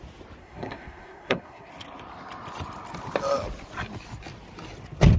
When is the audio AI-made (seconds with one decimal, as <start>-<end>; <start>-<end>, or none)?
0.4-1.7